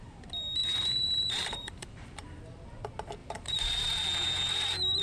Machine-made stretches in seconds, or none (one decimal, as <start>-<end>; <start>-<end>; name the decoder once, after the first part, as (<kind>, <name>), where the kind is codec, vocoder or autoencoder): 0.6-2.4 (vocoder, BigVGAN v2); 3.2-3.8

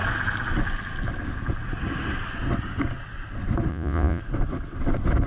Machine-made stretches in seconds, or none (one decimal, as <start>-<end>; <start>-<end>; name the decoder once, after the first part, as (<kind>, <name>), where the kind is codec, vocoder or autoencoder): 3.7-4.2 (vocoder, Vocos)

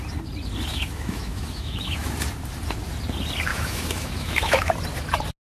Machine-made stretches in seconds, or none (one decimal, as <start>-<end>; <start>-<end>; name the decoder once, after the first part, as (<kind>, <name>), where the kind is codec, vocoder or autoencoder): 0.7-2.1 (autoencoder, DAC-VAE); 3.5-4.7